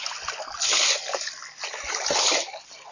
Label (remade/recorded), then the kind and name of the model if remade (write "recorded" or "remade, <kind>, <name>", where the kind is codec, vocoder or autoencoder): recorded